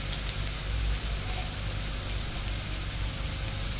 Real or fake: real